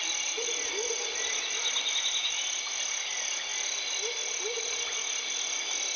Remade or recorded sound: remade